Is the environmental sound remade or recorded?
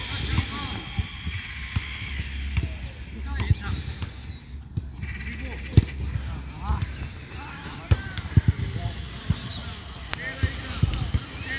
recorded